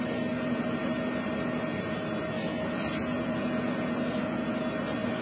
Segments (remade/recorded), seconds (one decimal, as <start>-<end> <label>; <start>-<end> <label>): 0.0-5.2 recorded